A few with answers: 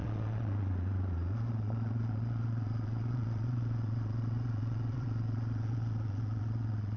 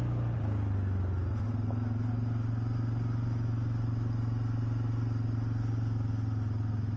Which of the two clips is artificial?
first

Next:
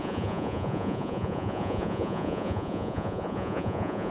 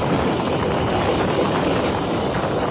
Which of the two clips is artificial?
first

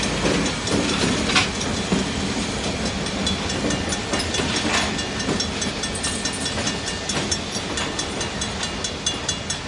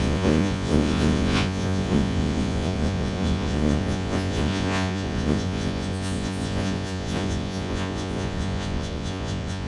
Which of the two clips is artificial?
second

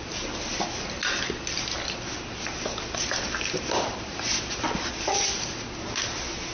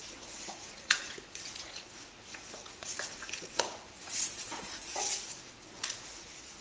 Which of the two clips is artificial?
second